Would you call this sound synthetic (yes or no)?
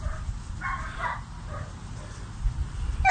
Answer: no